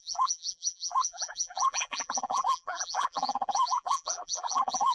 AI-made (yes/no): yes